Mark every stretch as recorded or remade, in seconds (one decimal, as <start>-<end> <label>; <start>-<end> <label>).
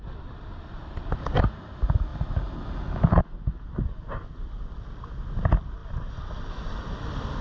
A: 0.0-5.8 recorded; 5.8-6.5 remade; 6.5-7.4 recorded